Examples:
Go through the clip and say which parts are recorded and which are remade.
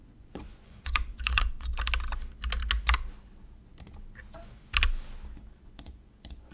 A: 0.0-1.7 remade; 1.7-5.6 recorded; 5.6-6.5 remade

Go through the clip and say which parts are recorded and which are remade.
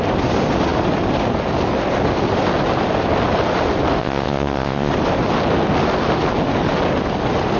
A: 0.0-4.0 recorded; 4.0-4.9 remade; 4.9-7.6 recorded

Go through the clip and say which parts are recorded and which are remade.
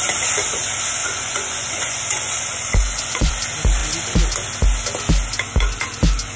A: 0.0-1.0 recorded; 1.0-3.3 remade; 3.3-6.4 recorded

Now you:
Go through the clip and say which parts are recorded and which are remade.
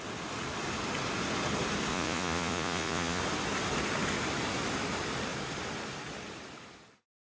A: 0.0-1.9 recorded; 1.9-3.2 remade; 3.2-7.2 recorded